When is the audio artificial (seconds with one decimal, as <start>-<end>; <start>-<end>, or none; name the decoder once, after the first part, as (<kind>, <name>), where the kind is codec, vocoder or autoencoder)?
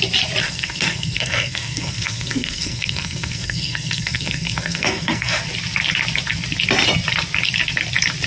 0.4-5.4 (codec, SNAC)